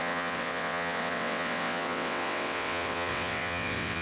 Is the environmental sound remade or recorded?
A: remade